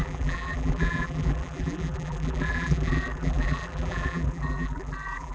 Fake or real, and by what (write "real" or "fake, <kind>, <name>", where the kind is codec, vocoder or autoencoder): fake, vocoder, BigVGAN v2